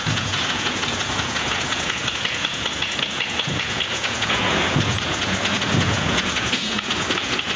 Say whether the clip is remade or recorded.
remade